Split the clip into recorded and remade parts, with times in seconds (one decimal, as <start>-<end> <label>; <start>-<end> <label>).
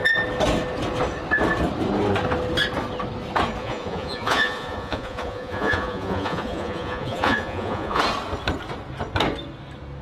0.0-3.6 recorded; 3.6-8.0 remade; 8.0-10.0 recorded